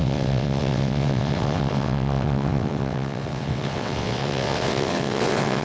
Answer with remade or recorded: remade